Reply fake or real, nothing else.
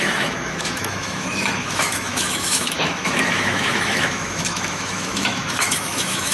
fake